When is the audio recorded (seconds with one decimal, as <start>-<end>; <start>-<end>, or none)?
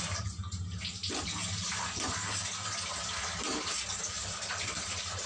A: 1.0-4.1